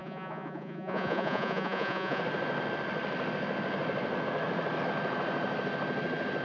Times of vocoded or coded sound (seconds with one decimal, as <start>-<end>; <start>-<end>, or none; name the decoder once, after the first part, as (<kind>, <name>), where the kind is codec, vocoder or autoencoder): 0.0-2.2 (vocoder, Vocos)